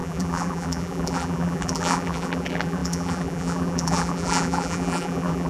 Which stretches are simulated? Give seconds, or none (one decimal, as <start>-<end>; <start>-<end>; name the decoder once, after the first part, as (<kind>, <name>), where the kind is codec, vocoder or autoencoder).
0.0-5.5 (vocoder, BigVGAN v2)